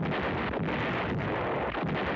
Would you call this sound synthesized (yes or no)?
no